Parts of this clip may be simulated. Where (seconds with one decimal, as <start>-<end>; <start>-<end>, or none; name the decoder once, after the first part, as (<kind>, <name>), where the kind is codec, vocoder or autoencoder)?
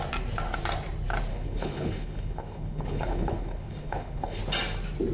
1.3-4.4 (codec, HILCodec)